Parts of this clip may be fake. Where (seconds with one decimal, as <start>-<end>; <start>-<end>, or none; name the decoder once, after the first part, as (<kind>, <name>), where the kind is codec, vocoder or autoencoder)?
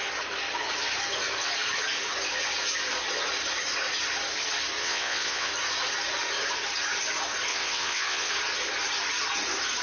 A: 4.8-5.5 (vocoder, WaveNeXt); 7.5-8.3